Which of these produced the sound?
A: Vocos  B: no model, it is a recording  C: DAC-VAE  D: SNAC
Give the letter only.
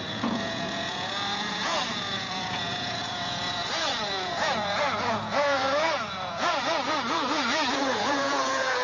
A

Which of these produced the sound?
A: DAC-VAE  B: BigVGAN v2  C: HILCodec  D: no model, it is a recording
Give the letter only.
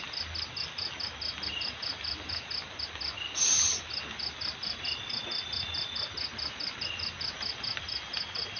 D